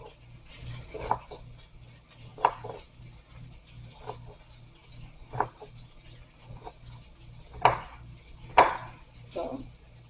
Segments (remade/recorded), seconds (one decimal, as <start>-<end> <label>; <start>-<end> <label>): 0.0-0.5 recorded; 0.5-1.1 remade; 1.1-2.3 recorded; 2.3-3.6 remade; 3.6-10.1 recorded